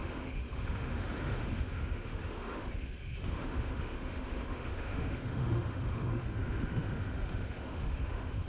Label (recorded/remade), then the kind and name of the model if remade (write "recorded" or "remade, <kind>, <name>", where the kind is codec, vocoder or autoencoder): remade, autoencoder, DAC-VAE